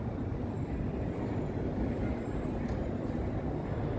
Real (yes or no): yes